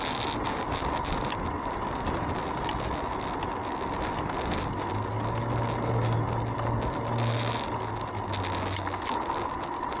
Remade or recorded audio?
recorded